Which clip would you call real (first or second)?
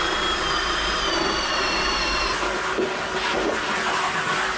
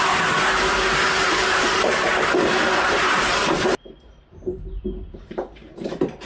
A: first